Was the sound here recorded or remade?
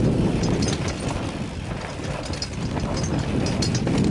recorded